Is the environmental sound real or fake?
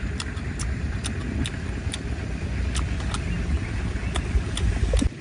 real